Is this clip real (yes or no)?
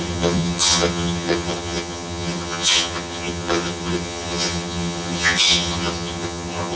no